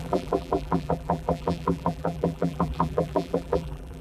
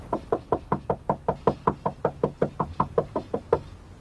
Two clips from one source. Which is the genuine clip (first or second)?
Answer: second